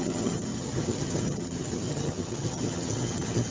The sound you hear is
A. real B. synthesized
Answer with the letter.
B